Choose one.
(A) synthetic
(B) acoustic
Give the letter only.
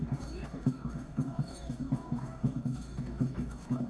A